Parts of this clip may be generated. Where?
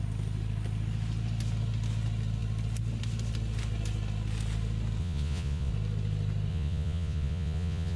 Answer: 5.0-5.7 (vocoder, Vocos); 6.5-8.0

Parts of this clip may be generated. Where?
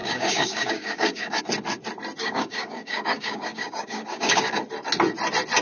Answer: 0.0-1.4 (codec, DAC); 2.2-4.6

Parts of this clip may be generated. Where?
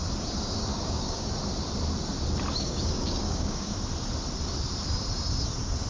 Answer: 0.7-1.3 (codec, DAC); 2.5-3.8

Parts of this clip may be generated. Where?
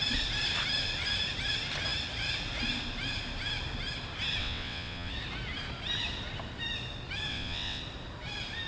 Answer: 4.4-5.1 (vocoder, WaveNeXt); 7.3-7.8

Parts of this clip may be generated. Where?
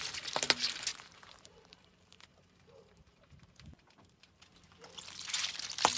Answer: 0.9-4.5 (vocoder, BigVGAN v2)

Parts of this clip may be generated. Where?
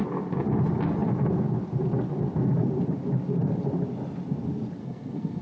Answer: 4.8-5.4 (codec, SNAC)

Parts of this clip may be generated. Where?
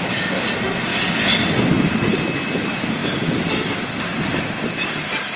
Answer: none